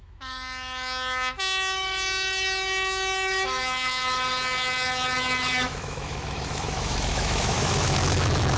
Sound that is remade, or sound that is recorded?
remade